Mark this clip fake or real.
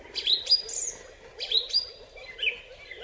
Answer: real